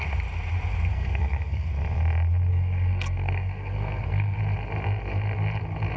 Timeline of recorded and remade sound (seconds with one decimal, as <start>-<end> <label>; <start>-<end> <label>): 0.0-0.9 recorded; 0.9-1.7 remade; 1.7-2.5 recorded; 2.5-4.4 remade; 4.4-6.0 recorded